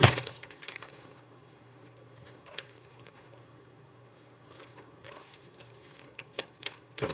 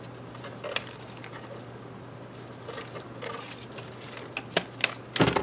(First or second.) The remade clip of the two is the first